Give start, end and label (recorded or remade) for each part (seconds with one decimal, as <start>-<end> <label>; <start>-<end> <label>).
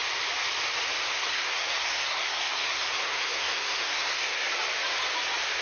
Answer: 0.0-1.1 recorded; 1.1-4.5 remade; 4.5-5.6 recorded